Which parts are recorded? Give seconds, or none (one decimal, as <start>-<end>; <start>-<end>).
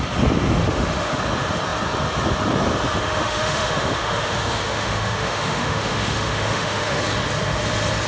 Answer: 0.0-0.6; 1.2-2.9; 7.0-8.1